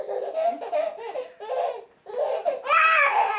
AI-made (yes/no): no